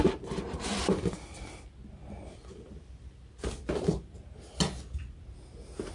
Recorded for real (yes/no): yes